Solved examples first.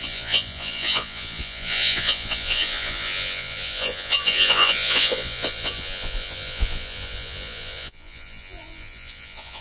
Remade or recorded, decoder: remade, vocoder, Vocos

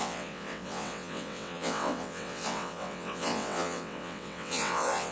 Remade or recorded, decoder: remade, vocoder, WaveNeXt